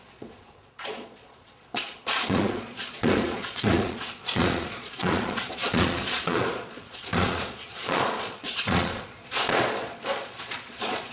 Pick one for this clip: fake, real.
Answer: fake